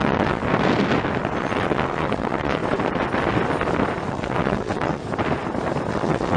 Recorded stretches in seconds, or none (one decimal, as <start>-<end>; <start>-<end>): 0.4-1.4; 2.6-4.1; 5.0-5.9